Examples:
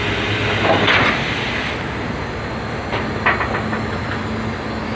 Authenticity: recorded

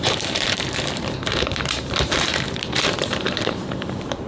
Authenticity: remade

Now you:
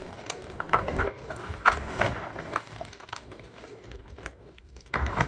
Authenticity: remade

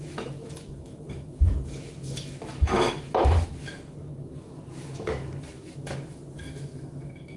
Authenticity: remade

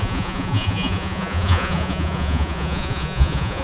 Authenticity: remade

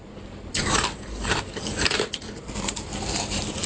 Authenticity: remade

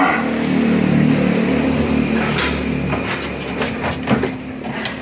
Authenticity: recorded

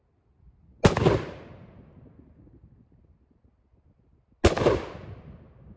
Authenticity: recorded